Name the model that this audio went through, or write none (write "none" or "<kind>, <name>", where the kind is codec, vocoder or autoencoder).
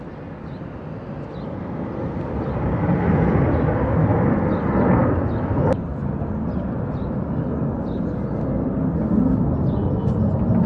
none